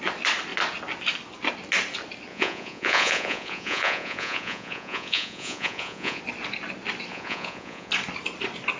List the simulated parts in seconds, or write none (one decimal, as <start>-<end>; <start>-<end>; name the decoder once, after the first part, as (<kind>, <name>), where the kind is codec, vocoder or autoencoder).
2.3-6.2 (vocoder, Vocos); 7.1-7.9